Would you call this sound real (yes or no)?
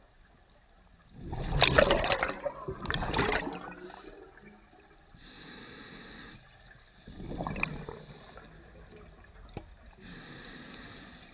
yes